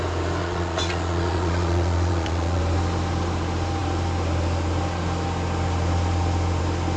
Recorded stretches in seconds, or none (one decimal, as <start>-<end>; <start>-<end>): 0.0-0.4; 2.6-7.0